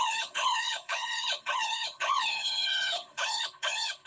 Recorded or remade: remade